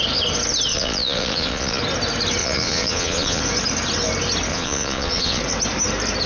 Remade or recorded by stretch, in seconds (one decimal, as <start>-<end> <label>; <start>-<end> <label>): 0.0-0.7 recorded; 0.7-1.8 remade; 1.8-2.4 recorded; 2.4-3.4 remade; 3.4-4.5 recorded; 4.5-5.4 remade; 5.4-6.3 recorded